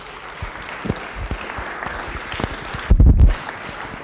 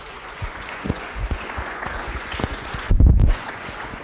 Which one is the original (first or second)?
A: first